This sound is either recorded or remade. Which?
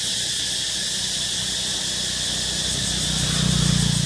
recorded